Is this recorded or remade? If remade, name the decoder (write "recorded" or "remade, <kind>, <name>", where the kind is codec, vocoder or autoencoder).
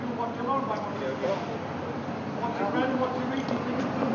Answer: recorded